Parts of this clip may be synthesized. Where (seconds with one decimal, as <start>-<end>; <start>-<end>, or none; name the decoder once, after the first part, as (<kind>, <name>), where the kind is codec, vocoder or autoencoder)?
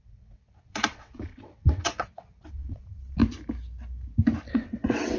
0.0-3.2 (vocoder, WaveNeXt); 4.5-5.2